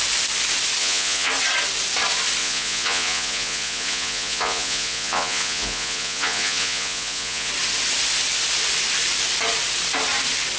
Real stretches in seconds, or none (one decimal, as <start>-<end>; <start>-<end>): 0.0-0.8; 1.3-2.4; 7.5-10.6